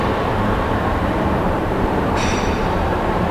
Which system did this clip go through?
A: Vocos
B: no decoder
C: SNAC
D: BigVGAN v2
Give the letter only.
D